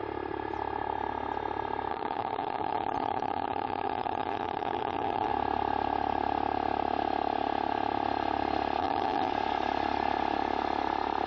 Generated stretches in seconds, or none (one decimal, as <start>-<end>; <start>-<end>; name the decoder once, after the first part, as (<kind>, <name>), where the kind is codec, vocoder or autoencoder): 1.9-5.3 (vocoder, HiFi-GAN); 8.8-9.3